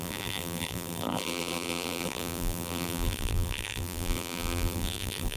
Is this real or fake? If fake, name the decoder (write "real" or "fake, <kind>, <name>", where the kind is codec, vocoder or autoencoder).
fake, vocoder, BigVGAN v2